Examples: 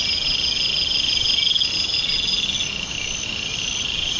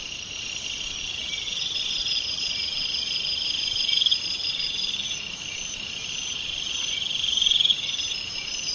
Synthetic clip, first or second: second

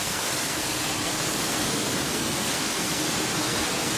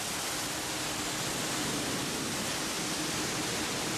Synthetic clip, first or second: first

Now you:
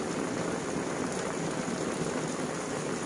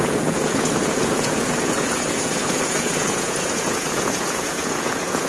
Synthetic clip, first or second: second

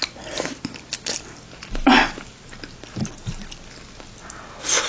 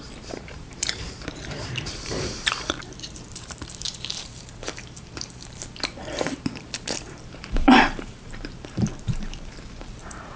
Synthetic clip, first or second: second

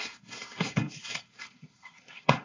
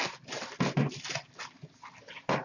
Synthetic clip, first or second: first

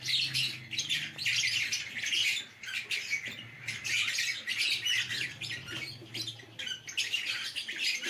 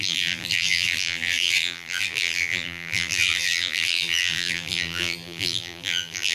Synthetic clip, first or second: second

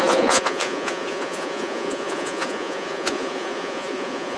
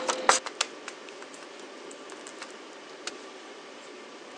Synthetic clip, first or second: first